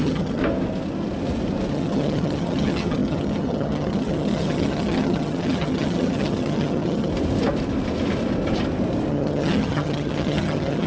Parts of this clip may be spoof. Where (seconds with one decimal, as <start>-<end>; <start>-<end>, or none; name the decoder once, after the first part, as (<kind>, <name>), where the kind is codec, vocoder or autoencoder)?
0.0-0.4 (vocoder, HiFi-GAN); 1.7-7.1; 9.1-10.9